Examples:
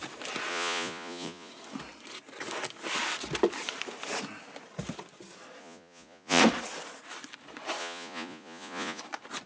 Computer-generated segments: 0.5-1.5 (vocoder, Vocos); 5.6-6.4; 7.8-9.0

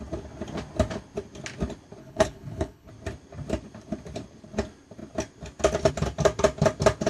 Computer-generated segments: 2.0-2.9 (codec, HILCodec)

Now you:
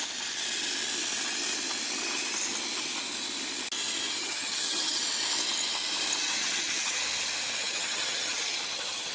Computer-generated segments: 4.2-5.0 (vocoder, HiFi-GAN); 6.2-7.0; 7.6-9.1

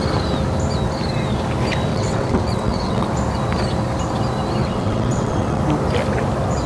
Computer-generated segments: 1.9-3.1 (vocoder, WaveNeXt); 4.6-5.6

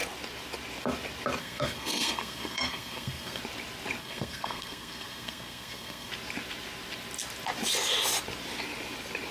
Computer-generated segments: 1.4-3.4 (codec, SNAC); 4.0-6.1

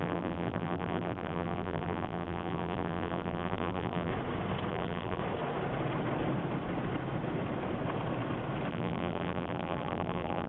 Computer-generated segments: 0.0-4.1 (vocoder, BigVGAN v2); 4.7-5.2; 8.7-10.5